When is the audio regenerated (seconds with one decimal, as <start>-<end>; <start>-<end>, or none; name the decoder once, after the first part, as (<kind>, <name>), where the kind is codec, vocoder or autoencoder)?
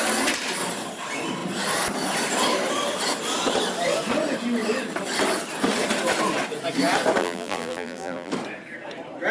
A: 7.2-8.3 (vocoder, BigVGAN v2)